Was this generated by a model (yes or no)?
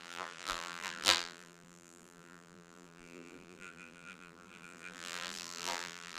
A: yes